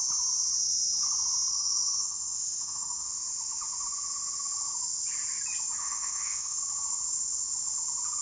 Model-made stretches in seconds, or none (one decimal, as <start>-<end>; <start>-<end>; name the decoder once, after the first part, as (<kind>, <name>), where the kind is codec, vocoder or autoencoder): 1.5-3.0 (autoencoder, DAC-VAE); 5.8-6.6